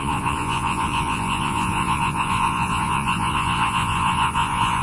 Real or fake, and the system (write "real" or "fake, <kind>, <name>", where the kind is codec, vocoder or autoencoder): fake, vocoder, Vocos